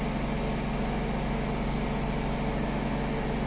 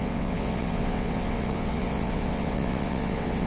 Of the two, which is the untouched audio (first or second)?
first